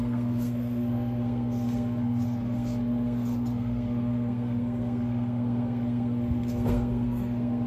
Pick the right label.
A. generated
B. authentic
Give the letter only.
A